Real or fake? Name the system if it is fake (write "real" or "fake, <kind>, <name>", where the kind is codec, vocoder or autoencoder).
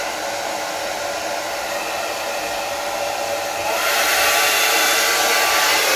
real